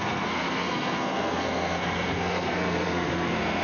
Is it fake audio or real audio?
fake